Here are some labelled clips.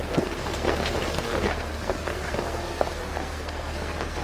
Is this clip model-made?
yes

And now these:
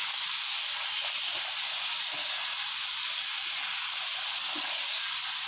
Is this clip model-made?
no